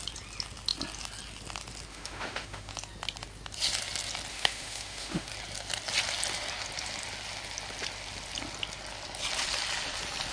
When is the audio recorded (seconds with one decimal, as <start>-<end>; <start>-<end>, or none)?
0.0-1.9; 2.7-4.3; 5.3-10.3